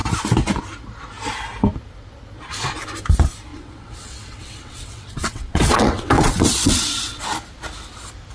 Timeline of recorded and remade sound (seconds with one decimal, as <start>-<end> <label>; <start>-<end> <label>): 0.0-3.5 recorded; 3.5-7.2 remade; 7.2-8.3 recorded